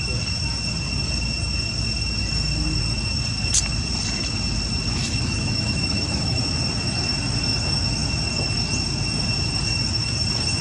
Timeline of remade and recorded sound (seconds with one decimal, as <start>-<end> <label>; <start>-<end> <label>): 0.0-5.0 recorded; 5.0-6.4 remade; 6.4-10.6 recorded